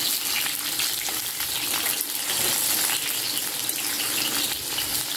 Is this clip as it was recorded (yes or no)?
yes